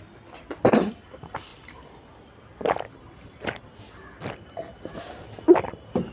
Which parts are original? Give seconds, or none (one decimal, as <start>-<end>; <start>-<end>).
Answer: 0.0-6.1